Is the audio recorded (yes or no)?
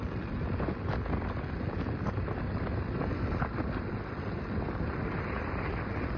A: yes